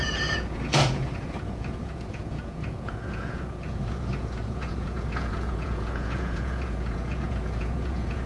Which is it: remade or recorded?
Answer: remade